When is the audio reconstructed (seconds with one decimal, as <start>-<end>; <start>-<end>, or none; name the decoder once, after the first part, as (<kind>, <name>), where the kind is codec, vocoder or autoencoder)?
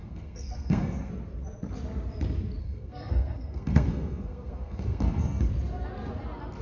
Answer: 0.0-1.1 (codec, SNAC); 2.6-5.5